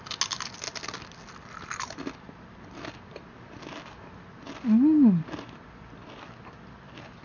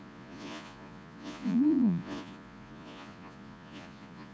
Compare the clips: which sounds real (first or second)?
first